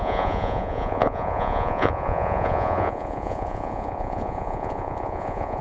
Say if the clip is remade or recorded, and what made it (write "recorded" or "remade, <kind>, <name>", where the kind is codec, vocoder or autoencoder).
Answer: remade, vocoder, Vocos